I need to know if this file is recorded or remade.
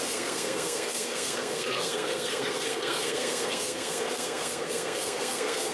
remade